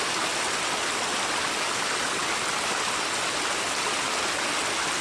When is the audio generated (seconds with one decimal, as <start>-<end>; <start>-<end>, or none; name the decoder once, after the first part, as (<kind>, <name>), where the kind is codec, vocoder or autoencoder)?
none